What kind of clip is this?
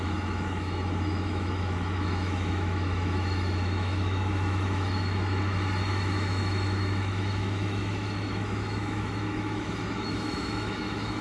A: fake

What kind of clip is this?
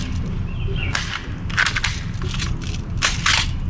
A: real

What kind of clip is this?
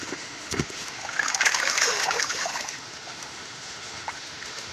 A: fake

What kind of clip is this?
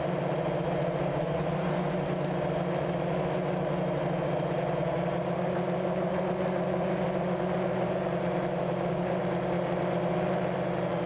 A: real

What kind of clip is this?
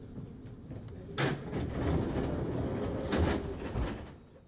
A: real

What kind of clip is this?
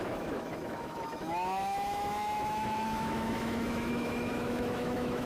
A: fake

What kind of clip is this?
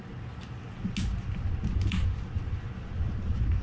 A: real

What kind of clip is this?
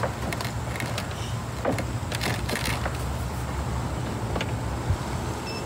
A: real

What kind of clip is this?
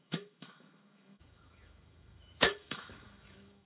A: fake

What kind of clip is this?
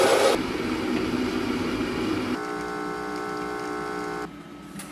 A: real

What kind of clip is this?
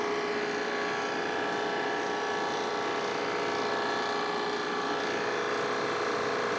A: real